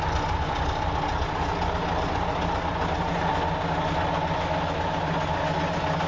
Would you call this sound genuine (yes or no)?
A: yes